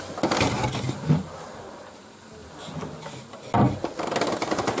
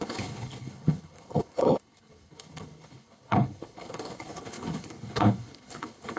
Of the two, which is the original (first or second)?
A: first